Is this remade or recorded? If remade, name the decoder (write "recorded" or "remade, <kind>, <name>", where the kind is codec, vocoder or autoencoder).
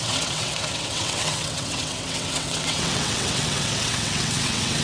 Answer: remade, vocoder, WaveNeXt